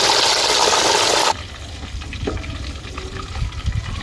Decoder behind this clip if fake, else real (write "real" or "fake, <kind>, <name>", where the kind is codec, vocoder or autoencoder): real